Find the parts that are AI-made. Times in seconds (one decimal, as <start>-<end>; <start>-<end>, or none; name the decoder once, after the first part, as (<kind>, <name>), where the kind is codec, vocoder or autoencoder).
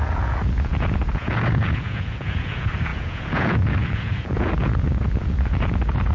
0.0-6.1 (vocoder, Vocos)